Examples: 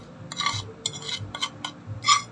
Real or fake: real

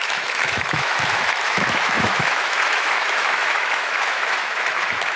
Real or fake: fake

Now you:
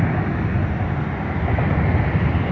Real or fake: real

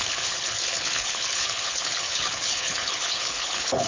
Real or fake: fake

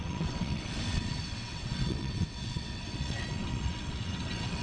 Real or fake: fake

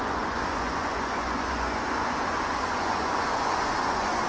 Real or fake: fake